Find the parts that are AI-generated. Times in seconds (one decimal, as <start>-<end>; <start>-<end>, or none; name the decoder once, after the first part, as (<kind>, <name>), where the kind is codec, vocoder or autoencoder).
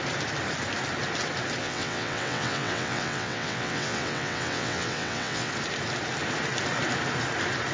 1.6-5.5 (vocoder, WaveNeXt)